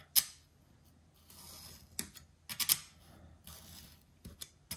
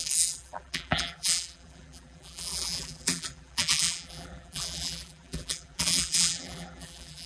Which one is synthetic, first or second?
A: second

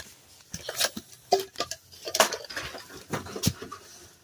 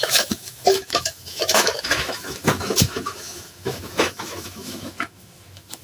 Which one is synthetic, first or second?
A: second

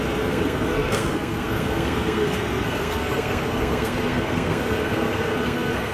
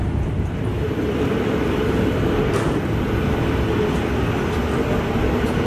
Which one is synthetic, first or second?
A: first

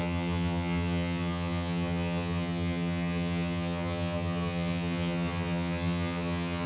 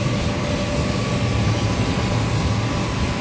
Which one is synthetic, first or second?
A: first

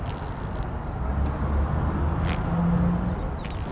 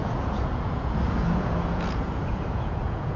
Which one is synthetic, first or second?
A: second